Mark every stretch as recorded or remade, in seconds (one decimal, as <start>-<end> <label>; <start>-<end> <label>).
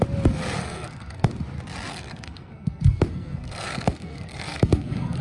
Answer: 0.0-0.6 recorded; 0.6-1.3 remade; 1.3-1.9 recorded; 1.9-5.2 remade